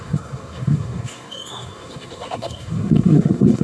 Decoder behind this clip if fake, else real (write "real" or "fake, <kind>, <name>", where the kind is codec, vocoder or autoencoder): fake, codec, SNAC